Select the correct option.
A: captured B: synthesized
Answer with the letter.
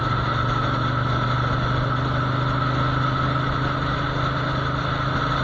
A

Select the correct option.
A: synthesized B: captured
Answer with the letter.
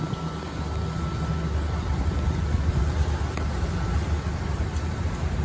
A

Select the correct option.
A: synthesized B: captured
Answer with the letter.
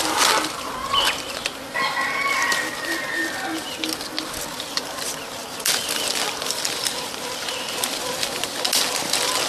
B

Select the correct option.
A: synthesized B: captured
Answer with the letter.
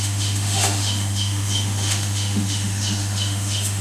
A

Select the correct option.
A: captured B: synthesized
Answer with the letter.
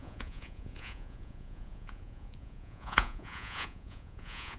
B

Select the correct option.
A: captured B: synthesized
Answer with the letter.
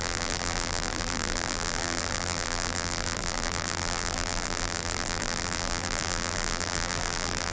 B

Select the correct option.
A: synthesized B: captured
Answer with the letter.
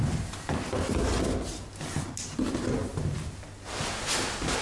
B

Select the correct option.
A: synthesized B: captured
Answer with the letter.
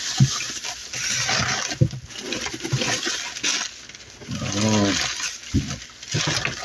B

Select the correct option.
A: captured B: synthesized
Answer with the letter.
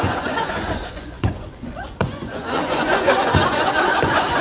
B